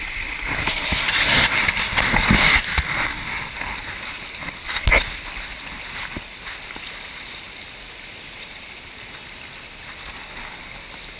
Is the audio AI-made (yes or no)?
no